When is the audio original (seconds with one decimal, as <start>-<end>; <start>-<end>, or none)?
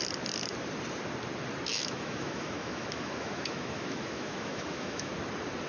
0.0-1.7; 5.1-5.7